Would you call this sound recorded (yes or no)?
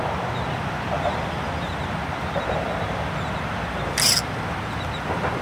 yes